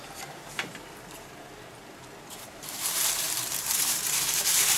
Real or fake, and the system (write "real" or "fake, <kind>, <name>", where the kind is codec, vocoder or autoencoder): fake, vocoder, BigVGAN v2